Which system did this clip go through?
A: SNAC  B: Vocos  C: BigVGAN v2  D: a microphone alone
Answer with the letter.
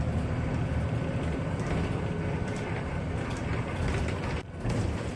D